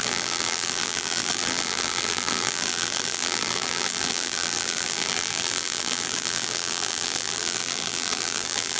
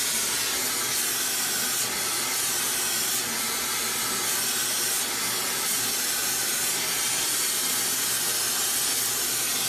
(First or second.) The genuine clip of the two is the second